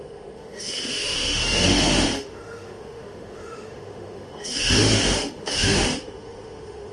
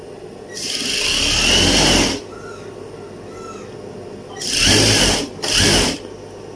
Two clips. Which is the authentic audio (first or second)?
second